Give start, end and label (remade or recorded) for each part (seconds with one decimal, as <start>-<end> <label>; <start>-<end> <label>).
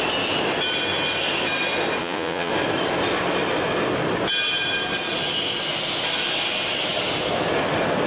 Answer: 0.0-2.0 recorded; 2.0-2.5 remade; 2.5-8.1 recorded